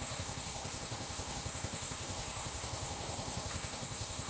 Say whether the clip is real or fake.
fake